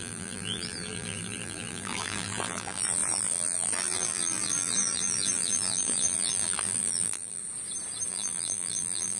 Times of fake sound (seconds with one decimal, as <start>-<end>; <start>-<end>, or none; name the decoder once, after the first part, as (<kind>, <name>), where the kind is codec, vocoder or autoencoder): 0.0-7.4 (vocoder, BigVGAN v2); 8.1-9.2